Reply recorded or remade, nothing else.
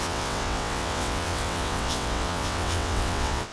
remade